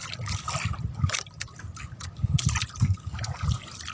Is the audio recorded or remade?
recorded